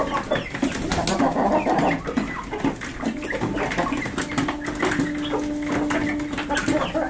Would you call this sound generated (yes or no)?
no